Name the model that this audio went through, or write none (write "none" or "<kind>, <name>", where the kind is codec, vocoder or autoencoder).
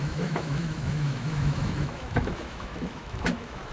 autoencoder, DAC-VAE